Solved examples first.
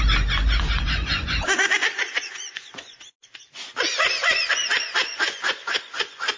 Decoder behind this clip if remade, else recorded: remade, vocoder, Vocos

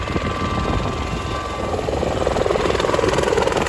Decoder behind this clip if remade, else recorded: recorded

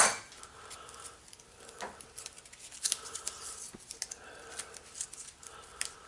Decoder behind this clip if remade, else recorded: recorded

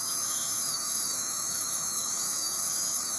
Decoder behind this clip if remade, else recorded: remade, autoencoder, DAC-VAE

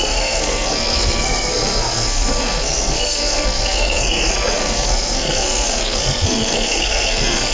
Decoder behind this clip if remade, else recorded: remade, codec, SNAC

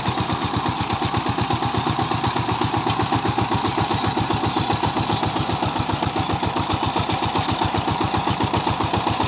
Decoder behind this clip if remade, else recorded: recorded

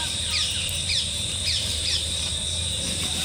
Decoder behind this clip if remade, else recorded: remade, vocoder, BigVGAN v2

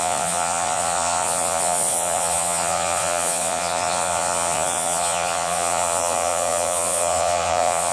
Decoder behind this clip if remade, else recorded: remade, vocoder, Vocos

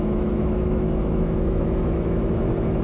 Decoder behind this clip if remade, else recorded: remade, autoencoder, DAC-VAE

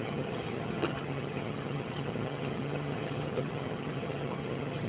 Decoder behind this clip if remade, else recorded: remade, vocoder, HiFi-GAN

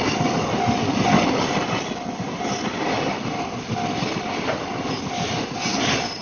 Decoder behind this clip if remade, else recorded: recorded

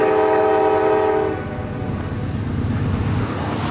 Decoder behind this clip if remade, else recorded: recorded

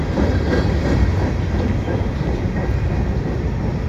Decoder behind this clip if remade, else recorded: recorded